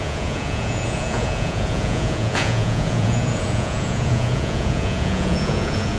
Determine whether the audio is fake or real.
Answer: fake